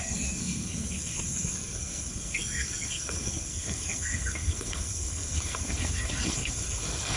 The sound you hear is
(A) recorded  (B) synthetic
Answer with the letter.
B